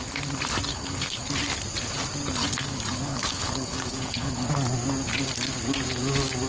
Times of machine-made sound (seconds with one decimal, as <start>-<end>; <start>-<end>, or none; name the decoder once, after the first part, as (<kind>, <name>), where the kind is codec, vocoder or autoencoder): 0.7-1.3 (codec, HILCodec); 2.4-4.5